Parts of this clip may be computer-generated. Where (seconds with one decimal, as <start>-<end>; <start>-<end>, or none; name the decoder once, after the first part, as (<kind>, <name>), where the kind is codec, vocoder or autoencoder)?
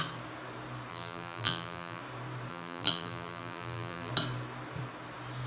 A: 0.9-2.0 (vocoder, BigVGAN v2); 2.5-4.1